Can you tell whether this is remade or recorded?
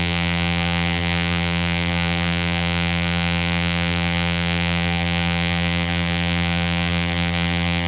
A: remade